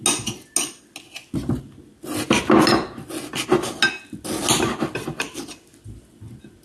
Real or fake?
real